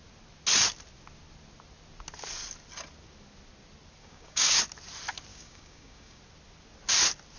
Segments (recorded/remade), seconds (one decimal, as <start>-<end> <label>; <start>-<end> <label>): 0.0-4.0 recorded; 4.0-4.6 remade; 4.6-5.3 recorded; 5.3-6.2 remade; 6.2-7.4 recorded